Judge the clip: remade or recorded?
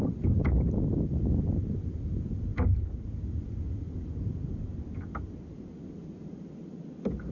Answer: recorded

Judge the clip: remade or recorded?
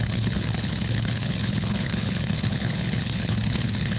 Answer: remade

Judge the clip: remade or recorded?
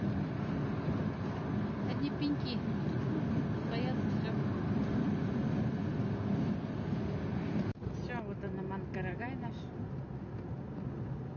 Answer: recorded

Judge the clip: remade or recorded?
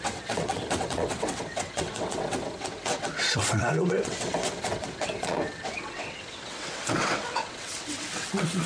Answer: remade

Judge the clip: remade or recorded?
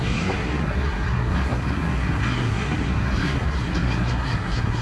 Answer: remade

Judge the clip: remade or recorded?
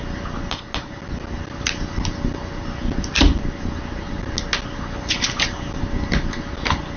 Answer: recorded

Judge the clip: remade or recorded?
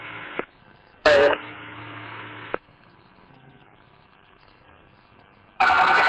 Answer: remade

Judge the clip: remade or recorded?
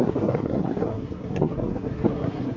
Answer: remade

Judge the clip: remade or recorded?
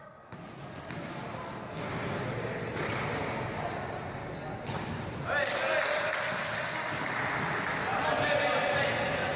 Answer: recorded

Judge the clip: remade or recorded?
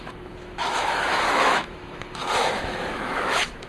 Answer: remade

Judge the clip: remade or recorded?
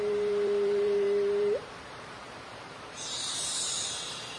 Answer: remade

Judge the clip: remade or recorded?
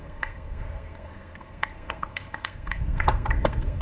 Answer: remade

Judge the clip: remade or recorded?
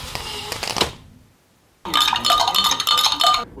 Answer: recorded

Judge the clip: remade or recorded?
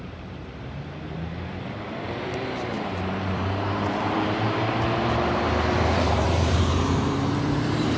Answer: remade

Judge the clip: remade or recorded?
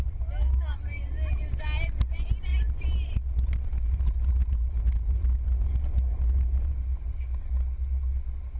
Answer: recorded